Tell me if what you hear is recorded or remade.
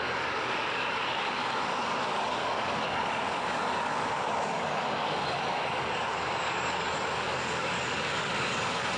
remade